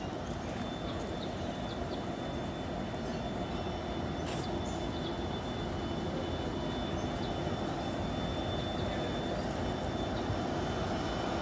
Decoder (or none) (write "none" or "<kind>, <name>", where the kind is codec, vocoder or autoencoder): none